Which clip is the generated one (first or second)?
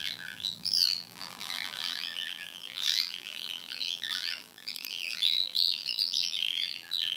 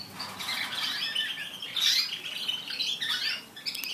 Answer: first